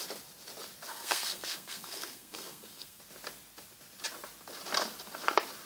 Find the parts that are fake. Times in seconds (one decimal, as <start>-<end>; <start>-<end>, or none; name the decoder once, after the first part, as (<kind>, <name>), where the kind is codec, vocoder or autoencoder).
0.9-3.0 (codec, SNAC)